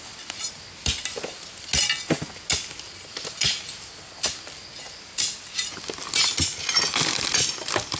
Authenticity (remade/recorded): recorded